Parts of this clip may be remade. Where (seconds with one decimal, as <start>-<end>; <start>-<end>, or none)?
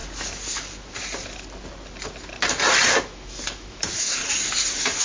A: 3.0-4.2